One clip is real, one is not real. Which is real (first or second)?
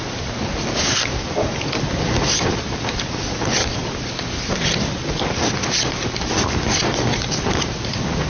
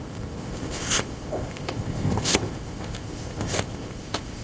first